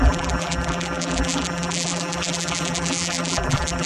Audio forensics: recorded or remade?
remade